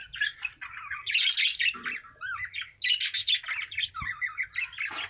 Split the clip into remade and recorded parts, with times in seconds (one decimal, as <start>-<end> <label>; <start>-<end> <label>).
0.0-1.6 recorded; 1.6-2.2 remade; 2.2-5.1 recorded